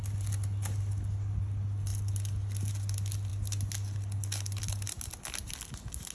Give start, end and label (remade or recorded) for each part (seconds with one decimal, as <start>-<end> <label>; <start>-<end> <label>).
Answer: 0.0-6.1 recorded